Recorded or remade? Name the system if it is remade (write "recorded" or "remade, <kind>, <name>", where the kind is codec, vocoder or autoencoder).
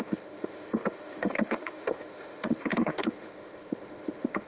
remade, autoencoder, DAC-VAE